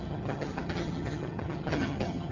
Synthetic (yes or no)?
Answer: yes